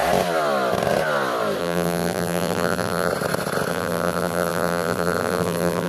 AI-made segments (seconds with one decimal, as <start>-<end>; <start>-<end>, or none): 1.6-3.1; 3.7-5.9